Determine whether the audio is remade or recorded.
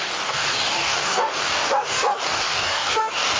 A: remade